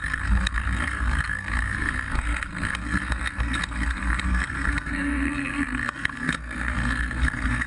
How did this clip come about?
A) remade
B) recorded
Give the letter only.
A